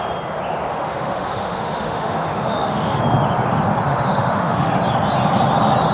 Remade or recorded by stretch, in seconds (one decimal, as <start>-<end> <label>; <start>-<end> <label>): 0.0-0.7 recorded; 0.7-3.0 remade; 3.0-3.9 recorded; 3.9-4.7 remade; 4.7-5.9 recorded